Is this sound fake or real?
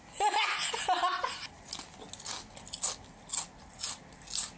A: real